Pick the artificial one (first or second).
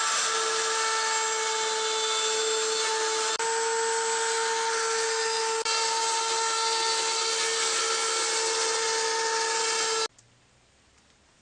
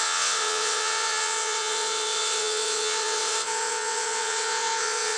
second